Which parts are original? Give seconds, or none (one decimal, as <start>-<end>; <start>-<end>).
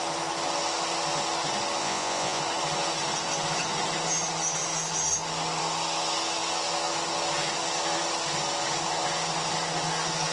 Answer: 0.0-1.8; 2.4-10.3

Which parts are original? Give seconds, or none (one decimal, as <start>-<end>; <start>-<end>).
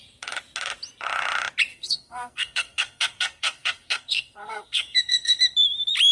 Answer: 0.0-1.7; 5.4-6.1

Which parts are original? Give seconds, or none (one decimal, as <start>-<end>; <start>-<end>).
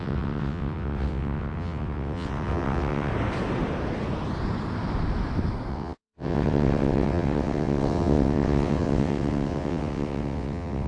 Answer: 3.1-5.7